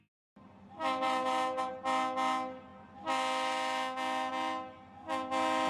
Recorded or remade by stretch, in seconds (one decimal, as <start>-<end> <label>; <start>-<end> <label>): 0.0-0.4 recorded; 0.4-1.7 remade; 1.7-5.7 recorded